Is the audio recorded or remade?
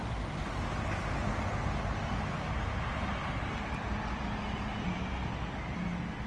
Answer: recorded